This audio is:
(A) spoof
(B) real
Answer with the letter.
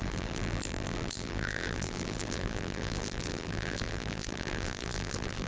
A